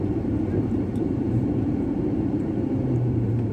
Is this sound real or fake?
fake